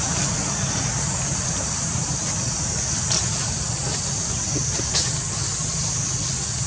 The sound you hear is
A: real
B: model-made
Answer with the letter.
A